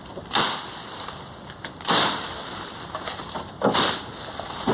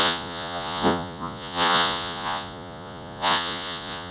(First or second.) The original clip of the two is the first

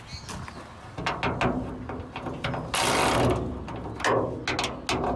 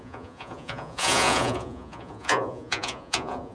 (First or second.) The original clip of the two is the first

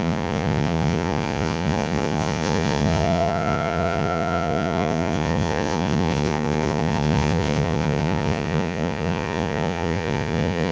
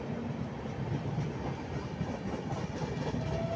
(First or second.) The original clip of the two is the second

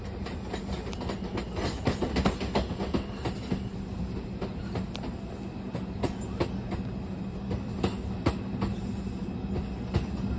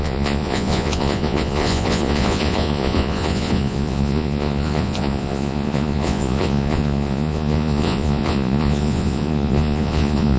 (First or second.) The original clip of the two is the first